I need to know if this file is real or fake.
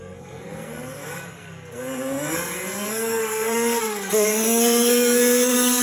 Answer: fake